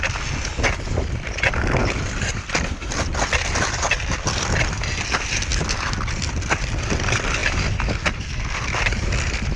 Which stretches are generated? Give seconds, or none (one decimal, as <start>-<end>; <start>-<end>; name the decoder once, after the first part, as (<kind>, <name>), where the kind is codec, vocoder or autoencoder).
1.8-2.9 (vocoder, BigVGAN v2); 5.5-6.7